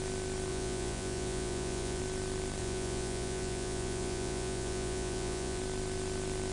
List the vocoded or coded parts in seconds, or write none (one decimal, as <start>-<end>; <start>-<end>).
0.5-2.0; 2.6-5.6

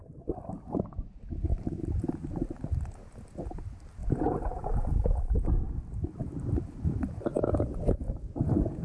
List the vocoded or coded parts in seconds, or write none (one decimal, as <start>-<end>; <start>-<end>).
1.5-2.7; 4.0-4.9; 6.2-7.2

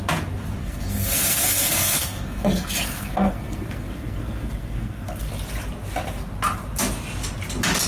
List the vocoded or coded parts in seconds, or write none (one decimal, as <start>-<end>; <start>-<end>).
0.6-5.3

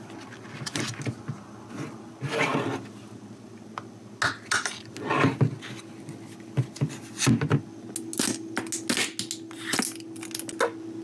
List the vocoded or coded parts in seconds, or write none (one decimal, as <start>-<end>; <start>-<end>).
none

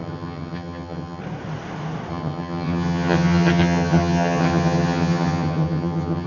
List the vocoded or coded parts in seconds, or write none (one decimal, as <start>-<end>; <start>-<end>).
0.0-1.2; 2.1-6.3

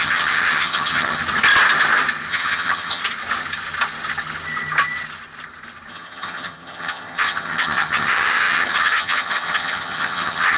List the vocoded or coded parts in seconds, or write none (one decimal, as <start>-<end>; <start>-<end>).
0.0-1.2; 2.3-3.0; 5.9-10.6